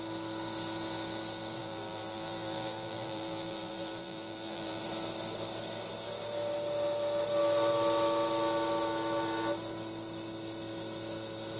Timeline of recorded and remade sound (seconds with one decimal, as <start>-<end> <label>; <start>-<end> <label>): 0.0-1.6 recorded; 1.6-4.8 remade; 4.8-11.6 recorded